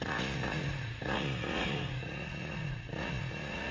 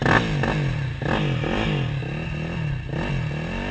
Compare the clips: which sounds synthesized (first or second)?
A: first